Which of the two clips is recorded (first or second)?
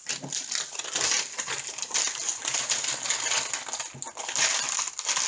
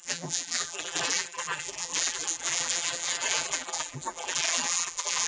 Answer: first